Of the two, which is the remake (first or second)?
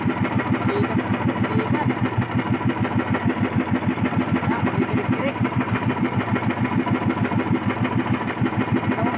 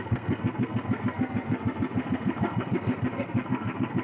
second